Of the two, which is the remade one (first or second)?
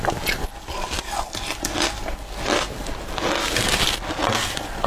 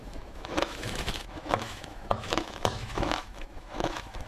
second